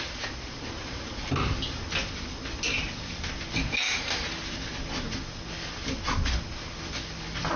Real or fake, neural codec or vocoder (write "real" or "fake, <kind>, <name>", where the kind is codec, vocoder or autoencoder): real